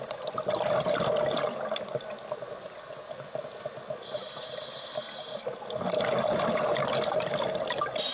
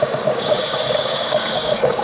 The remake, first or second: second